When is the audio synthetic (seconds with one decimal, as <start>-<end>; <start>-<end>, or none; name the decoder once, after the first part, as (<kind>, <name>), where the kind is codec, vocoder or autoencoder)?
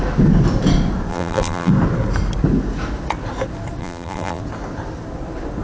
1.1-1.7 (vocoder, BigVGAN v2); 3.8-4.4